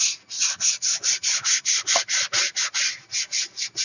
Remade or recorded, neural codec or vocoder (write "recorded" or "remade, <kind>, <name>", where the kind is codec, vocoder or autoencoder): recorded